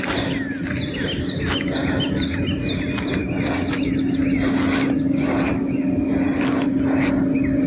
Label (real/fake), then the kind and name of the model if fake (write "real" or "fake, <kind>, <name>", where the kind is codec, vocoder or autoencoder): real